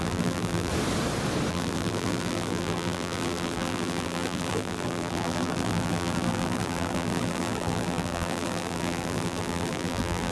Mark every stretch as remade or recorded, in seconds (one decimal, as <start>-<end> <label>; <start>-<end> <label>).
0.0-0.7 remade; 0.7-1.5 recorded; 1.5-10.3 remade

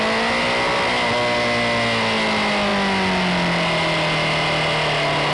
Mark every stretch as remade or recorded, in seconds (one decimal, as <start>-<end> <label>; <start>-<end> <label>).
0.0-5.3 recorded

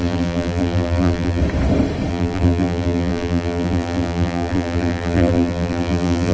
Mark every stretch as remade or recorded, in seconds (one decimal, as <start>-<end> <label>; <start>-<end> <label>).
0.0-1.4 remade; 1.4-2.1 recorded; 2.1-6.3 remade

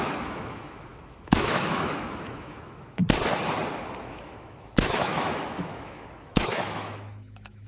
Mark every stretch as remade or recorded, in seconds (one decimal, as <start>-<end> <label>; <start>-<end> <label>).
0.0-3.0 remade; 3.0-4.0 recorded; 4.0-7.7 remade

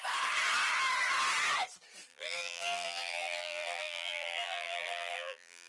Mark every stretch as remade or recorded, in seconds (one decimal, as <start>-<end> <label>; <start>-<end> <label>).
0.0-2.1 recorded; 2.1-5.7 remade

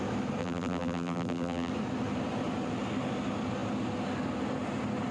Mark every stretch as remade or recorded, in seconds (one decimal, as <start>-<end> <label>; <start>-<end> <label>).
0.0-0.4 recorded; 0.4-1.7 remade; 1.7-5.1 recorded